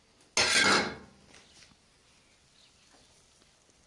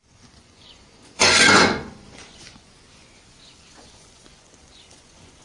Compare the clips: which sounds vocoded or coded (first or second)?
second